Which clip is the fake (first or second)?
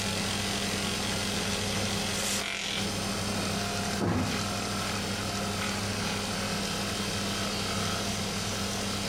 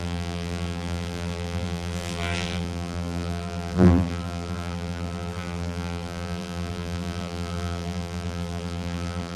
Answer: second